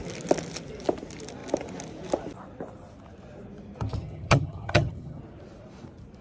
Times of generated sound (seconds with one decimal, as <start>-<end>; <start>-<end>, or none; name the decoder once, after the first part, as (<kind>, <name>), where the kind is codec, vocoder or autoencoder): 4.0-5.2 (vocoder, HiFi-GAN)